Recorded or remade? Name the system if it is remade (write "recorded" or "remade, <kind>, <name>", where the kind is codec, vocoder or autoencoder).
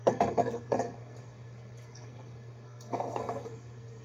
remade, codec, SNAC